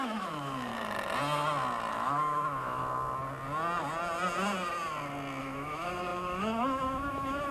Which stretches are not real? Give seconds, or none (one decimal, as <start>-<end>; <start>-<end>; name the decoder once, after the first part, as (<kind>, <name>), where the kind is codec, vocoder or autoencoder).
0.0-0.7 (autoencoder, DAC-VAE); 1.9-2.8; 5.4-7.5